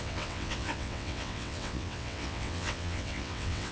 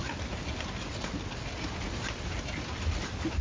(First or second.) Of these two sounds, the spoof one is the first